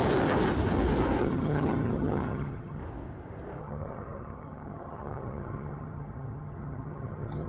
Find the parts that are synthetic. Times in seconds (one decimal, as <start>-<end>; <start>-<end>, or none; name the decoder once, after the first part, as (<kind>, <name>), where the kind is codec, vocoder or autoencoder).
1.2-2.8 (vocoder, HiFi-GAN); 3.6-7.5